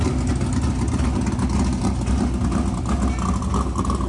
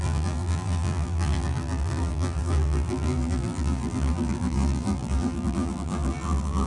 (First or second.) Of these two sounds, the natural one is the first